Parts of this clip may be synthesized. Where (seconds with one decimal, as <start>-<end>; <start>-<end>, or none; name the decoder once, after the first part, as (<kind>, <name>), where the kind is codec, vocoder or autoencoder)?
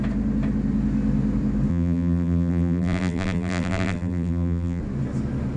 1.7-4.8 (vocoder, BigVGAN v2)